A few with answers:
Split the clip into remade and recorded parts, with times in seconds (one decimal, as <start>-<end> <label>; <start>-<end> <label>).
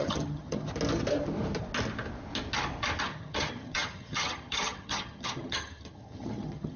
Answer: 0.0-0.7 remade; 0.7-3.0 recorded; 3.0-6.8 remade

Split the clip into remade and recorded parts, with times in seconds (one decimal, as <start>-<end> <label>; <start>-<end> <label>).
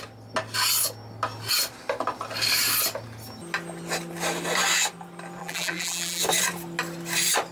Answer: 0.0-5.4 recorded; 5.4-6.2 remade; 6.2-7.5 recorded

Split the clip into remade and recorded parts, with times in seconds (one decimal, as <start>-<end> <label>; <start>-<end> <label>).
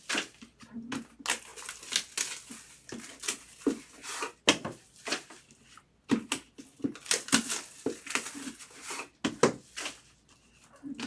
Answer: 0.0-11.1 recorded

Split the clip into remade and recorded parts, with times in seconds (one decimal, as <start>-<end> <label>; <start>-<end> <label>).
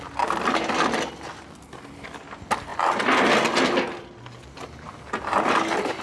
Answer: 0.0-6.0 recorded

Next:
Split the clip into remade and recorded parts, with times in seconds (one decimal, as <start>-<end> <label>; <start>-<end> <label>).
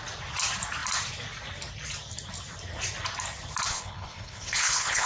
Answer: 0.0-3.7 recorded; 3.7-5.1 remade